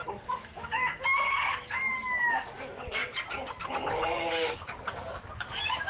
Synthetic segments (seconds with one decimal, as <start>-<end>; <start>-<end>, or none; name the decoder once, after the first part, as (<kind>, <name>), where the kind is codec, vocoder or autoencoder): 0.0-3.0 (codec, DAC); 3.9-5.9